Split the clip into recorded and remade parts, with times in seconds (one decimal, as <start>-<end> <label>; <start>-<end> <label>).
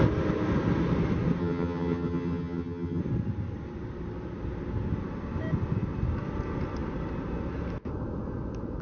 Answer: 0.0-1.4 recorded; 1.4-3.0 remade; 3.0-8.8 recorded